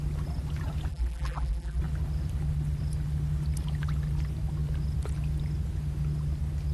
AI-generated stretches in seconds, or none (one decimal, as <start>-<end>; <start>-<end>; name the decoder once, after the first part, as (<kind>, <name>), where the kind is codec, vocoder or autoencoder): 0.9-1.8 (vocoder, BigVGAN v2)